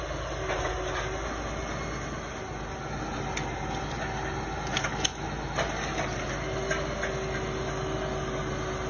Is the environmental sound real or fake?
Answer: real